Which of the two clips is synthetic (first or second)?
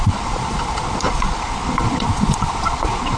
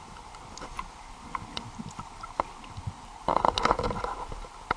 first